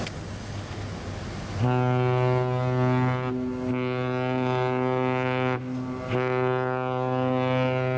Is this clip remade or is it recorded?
recorded